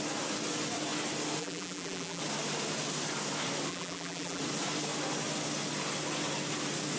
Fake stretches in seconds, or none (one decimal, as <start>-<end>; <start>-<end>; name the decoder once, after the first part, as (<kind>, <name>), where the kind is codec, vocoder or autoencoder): 1.4-2.2 (vocoder, BigVGAN v2); 3.7-4.4